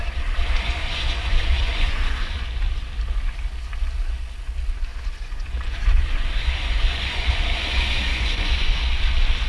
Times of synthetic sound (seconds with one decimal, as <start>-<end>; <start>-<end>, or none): 0.8-2.4; 4.9-8.8